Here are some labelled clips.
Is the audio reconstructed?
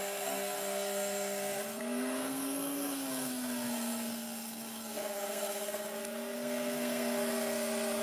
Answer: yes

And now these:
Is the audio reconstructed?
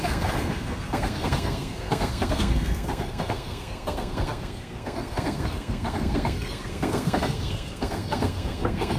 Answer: yes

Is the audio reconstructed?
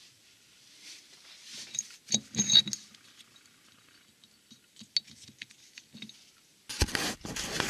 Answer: no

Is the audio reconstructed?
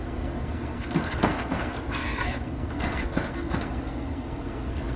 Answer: yes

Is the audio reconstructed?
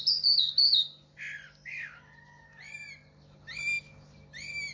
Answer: no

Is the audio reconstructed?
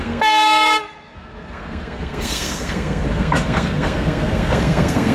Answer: yes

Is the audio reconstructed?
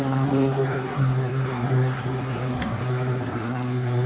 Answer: yes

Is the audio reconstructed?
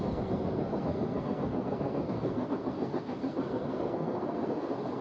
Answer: yes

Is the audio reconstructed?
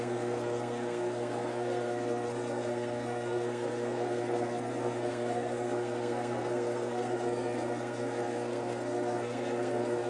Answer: yes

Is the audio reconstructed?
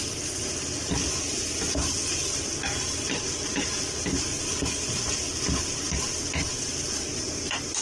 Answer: no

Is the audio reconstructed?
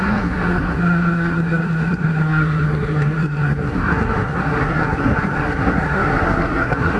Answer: yes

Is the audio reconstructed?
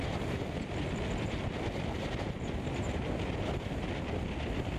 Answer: no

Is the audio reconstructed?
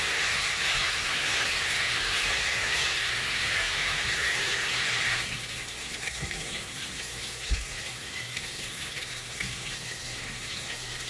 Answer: yes